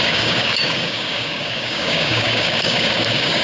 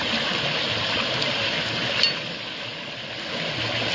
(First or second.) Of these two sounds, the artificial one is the first